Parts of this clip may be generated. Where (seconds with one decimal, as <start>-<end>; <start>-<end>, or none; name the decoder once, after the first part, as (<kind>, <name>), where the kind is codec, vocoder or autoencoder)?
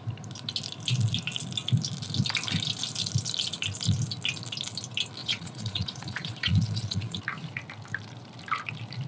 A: 5.2-7.2 (vocoder, Vocos)